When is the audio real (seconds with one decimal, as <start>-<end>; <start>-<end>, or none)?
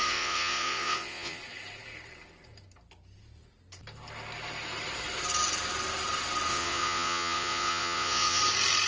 1.4-6.5; 8.4-8.9